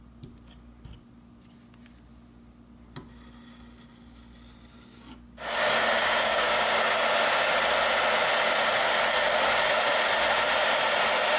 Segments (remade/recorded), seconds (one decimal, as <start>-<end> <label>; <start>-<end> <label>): 0.0-6.0 recorded; 6.0-6.8 remade; 6.8-11.4 recorded